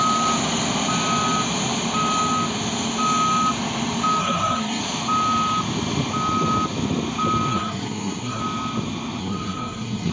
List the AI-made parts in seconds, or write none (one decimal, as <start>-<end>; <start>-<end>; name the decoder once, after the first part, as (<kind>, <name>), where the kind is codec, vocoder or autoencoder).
4.2-4.8 (codec, SNAC); 7.5-8.4; 9.2-10.1